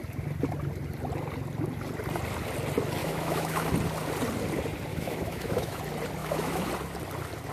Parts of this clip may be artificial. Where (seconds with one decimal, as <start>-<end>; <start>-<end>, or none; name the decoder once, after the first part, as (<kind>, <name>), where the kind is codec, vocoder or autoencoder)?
3.0-3.7 (autoencoder, DAC-VAE); 4.9-5.8; 6.2-6.7